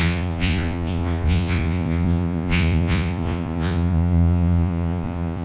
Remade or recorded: remade